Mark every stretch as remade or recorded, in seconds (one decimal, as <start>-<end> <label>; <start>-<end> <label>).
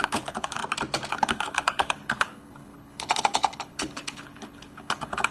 0.0-0.6 remade; 0.6-1.1 recorded; 1.1-5.3 remade